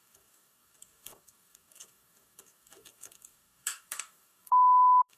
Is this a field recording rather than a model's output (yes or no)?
no